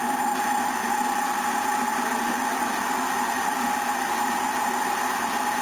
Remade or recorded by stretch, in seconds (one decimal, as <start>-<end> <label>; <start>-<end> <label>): 0.0-1.9 recorded; 1.9-5.6 remade

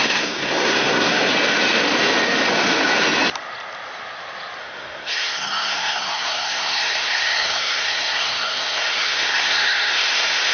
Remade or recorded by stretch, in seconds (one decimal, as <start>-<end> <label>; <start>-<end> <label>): 0.0-1.3 remade; 1.3-4.6 recorded; 4.6-10.5 remade

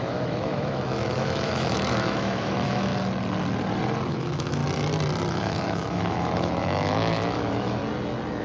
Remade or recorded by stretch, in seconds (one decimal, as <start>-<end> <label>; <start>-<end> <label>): 0.0-2.9 remade; 2.9-4.1 recorded; 4.1-4.6 remade; 4.6-5.3 recorded; 5.3-7.8 remade; 7.8-8.4 recorded

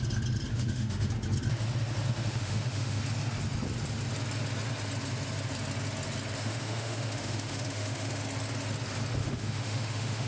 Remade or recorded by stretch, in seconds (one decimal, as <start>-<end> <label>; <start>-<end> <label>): 0.0-0.5 recorded; 0.5-1.1 remade; 1.1-2.3 recorded; 2.3-3.0 remade; 3.0-6.4 recorded; 6.4-8.2 remade; 8.2-9.2 recorded; 9.2-10.3 remade

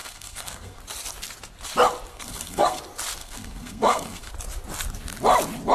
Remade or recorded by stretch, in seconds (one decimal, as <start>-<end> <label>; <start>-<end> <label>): 0.0-0.8 remade; 0.8-2.1 recorded; 2.1-2.8 remade; 2.8-3.2 recorded; 3.2-4.3 remade; 4.3-5.7 recorded

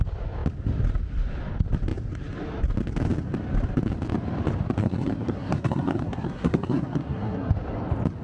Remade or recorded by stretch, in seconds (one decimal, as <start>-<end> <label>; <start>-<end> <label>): 0.0-4.8 recorded; 4.8-7.5 remade; 7.5-8.2 recorded

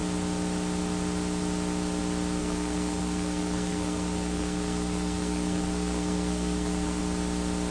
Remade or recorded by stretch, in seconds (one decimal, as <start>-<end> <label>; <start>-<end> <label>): 0.0-2.4 recorded; 2.4-7.0 remade; 7.0-7.7 recorded

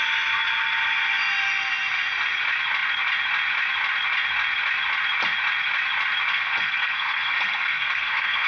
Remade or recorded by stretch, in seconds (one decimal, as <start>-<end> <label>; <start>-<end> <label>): 0.0-6.3 recorded; 6.3-8.5 remade